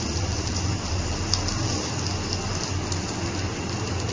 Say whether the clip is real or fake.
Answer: real